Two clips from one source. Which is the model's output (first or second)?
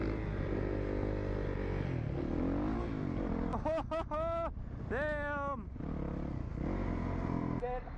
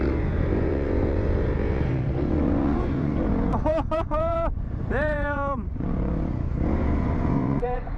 second